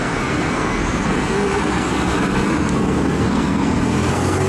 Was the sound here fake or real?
fake